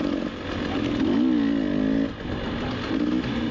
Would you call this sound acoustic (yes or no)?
yes